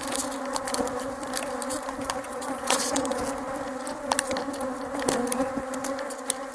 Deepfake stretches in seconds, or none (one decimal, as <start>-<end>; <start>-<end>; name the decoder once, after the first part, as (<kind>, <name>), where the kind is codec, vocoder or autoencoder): 2.3-3.2 (vocoder, Vocos)